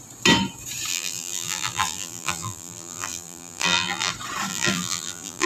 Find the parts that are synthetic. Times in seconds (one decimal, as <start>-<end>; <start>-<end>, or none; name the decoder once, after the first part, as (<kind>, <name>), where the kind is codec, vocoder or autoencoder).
0.9-4.1 (vocoder, BigVGAN v2); 4.5-5.5